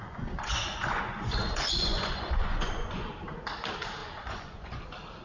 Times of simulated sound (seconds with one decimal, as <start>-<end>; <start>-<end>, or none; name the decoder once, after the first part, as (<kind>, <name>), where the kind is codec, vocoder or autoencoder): 0.0-3.1 (vocoder, Vocos); 4.0-4.8